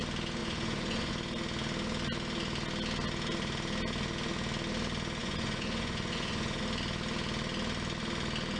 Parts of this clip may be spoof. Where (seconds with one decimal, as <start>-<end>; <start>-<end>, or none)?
0.4-1.1; 5.2-6.6